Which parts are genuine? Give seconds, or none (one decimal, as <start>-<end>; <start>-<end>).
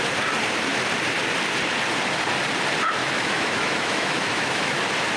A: 0.0-3.0; 4.8-5.2